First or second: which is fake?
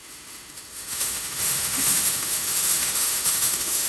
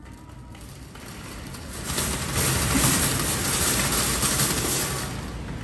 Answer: first